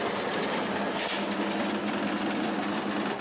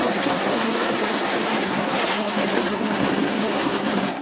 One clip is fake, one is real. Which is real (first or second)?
first